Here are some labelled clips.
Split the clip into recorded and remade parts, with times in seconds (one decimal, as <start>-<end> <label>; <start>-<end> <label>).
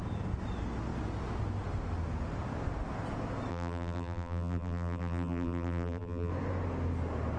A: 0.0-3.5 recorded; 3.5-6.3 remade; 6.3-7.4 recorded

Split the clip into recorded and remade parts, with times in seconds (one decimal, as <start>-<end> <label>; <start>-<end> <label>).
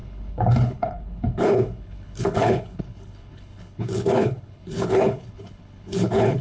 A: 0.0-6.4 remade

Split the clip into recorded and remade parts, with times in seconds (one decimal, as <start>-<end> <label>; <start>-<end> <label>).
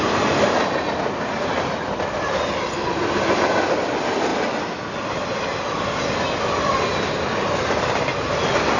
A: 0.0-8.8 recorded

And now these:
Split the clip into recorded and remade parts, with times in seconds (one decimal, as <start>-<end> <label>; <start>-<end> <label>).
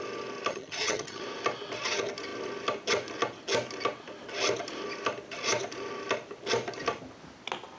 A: 0.0-0.5 recorded; 0.5-1.2 remade; 1.2-7.8 recorded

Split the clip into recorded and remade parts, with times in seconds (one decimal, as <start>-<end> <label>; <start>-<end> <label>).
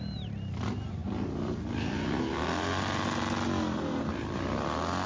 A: 0.0-5.1 recorded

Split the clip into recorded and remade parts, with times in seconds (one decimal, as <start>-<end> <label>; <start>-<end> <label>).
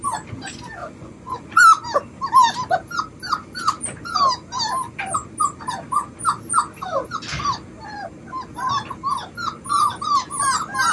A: 0.0-0.8 recorded; 0.8-1.6 remade; 1.6-10.9 recorded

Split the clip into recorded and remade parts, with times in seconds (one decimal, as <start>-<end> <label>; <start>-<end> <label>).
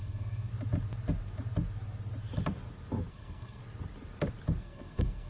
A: 0.0-0.5 remade; 0.5-3.1 recorded; 3.1-3.6 remade; 3.6-4.6 recorded; 4.6-5.3 remade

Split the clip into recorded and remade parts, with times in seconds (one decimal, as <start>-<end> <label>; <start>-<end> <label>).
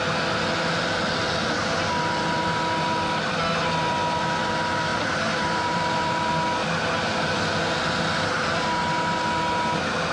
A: 0.0-4.9 recorded; 4.9-6.3 remade; 6.3-10.1 recorded